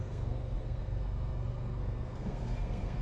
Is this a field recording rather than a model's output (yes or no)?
no